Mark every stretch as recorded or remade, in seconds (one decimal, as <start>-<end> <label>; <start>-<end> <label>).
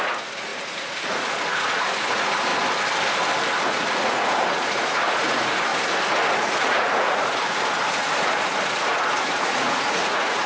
0.0-2.5 remade; 2.5-3.7 recorded; 3.7-5.7 remade; 5.7-6.3 recorded; 6.3-10.5 remade